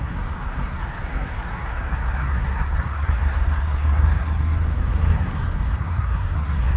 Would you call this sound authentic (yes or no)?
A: no